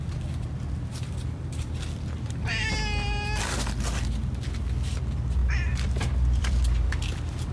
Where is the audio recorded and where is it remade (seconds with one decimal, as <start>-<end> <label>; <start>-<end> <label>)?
0.0-5.4 recorded; 5.4-6.9 remade; 6.9-7.5 recorded